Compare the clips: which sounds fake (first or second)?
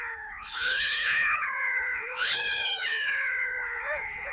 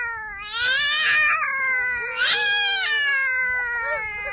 first